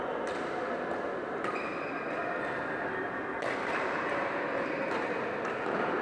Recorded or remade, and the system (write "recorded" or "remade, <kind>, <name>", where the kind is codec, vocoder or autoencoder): recorded